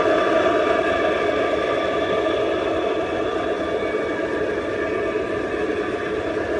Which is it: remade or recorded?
recorded